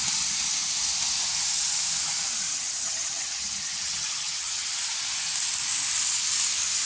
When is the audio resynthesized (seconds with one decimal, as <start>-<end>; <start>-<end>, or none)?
2.5-4.7

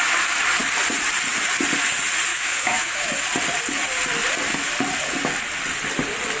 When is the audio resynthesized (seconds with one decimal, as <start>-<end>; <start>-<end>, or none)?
2.3-3.1